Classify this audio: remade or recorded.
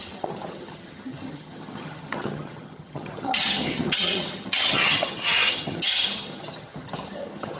remade